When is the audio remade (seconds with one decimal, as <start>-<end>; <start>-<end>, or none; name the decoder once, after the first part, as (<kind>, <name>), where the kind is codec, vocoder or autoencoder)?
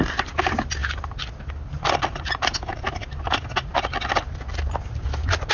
none